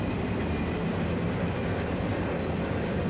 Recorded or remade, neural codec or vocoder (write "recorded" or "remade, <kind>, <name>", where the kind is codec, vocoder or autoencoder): recorded